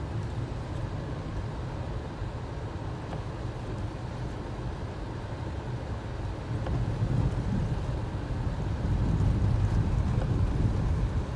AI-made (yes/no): no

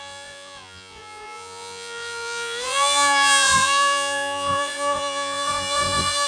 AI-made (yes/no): yes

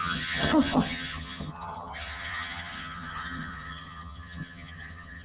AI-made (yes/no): yes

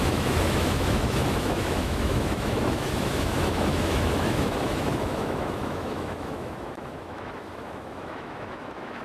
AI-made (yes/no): yes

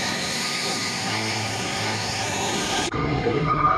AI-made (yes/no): yes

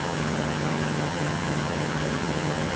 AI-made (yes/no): yes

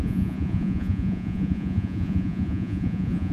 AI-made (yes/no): yes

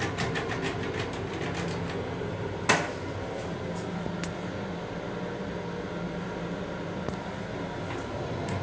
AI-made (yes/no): no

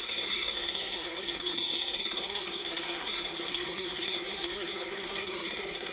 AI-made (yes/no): yes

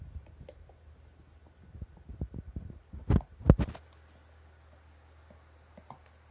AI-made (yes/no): no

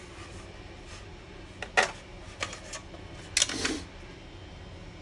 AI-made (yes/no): no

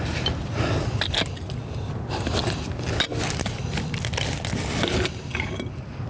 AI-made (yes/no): no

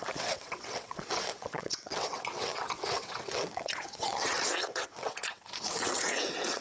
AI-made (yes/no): yes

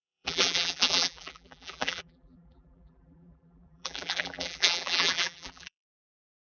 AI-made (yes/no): yes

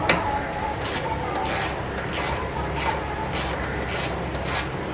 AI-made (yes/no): no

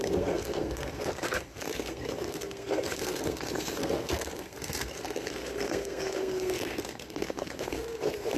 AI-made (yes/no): yes